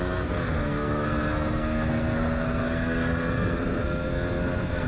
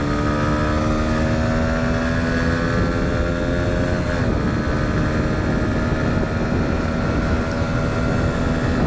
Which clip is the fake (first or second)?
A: first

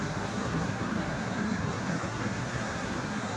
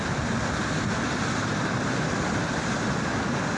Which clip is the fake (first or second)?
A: first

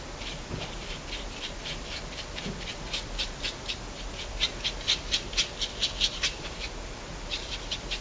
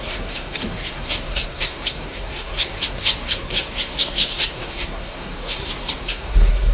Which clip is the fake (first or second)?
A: second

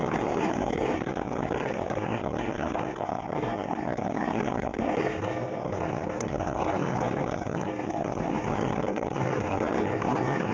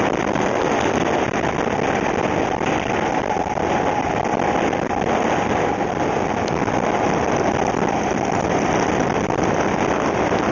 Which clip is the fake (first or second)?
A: first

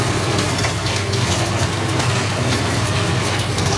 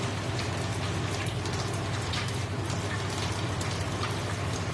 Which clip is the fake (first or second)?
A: first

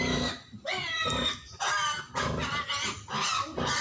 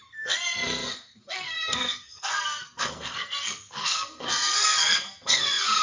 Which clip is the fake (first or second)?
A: second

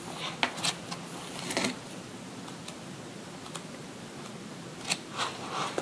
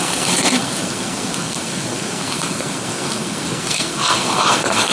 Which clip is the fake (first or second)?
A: second